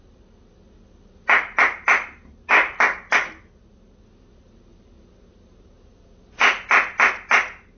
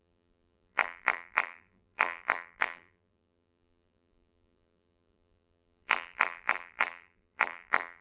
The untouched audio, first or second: first